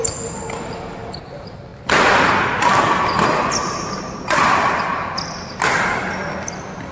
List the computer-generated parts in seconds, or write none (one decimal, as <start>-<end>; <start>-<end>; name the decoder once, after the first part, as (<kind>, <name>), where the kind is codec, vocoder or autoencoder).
1.7-2.3 (vocoder, BigVGAN v2); 4.9-5.5